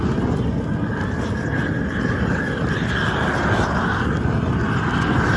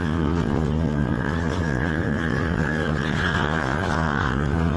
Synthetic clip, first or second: second